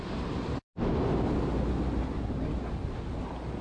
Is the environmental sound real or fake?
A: real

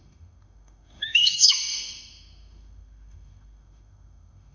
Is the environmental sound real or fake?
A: fake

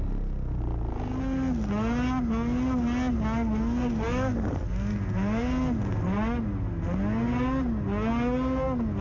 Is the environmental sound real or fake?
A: real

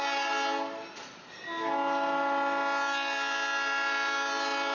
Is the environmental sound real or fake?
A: real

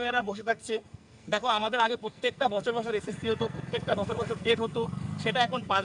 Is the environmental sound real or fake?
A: fake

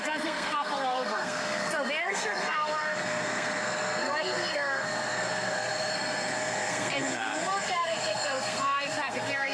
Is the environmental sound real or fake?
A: fake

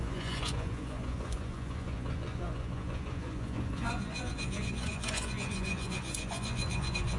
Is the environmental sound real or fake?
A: fake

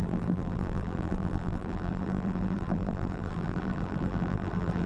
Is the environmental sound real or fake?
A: fake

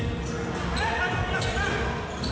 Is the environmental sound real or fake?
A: real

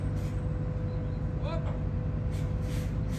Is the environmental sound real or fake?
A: real